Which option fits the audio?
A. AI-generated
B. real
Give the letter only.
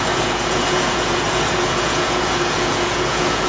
A